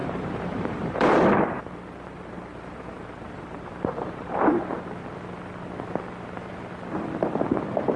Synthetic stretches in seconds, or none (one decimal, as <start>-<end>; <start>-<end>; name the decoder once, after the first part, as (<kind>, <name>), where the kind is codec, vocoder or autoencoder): 0.0-1.4 (vocoder, BigVGAN v2); 2.5-4.4